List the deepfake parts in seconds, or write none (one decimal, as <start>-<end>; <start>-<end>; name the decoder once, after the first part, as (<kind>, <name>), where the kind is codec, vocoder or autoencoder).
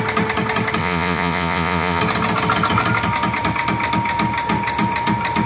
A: 0.8-2.0 (vocoder, Vocos)